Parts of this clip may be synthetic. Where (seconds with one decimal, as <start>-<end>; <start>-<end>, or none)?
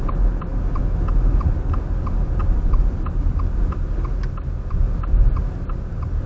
2.4-3.8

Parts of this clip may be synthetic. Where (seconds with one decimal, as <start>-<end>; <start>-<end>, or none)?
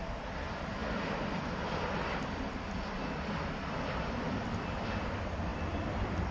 none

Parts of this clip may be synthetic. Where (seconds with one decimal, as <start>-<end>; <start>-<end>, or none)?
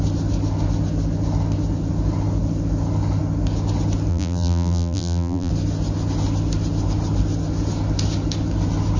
4.1-5.5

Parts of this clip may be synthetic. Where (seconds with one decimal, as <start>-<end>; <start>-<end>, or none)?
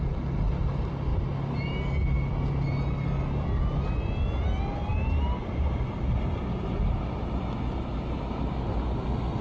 none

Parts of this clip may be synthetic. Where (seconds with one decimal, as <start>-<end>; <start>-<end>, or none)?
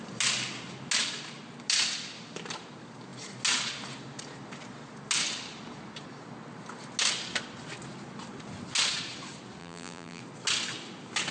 9.6-10.2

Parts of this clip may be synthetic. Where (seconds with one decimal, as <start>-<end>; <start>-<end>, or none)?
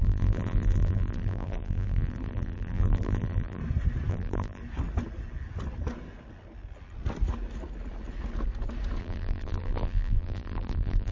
0.0-3.6; 4.1-4.6; 9.0-11.1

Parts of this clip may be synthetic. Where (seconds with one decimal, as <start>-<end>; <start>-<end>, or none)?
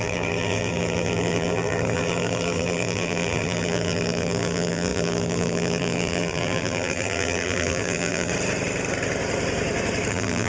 0.0-8.3; 10.1-10.5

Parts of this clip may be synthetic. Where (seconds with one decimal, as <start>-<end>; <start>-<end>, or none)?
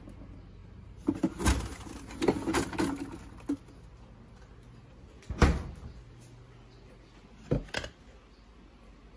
0.6-1.4